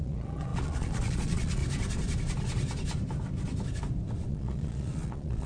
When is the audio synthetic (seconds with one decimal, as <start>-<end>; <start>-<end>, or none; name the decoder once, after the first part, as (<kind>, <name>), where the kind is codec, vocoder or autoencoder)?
0.0-1.6 (vocoder, Vocos); 4.3-5.5